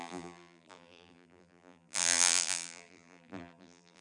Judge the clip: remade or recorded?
remade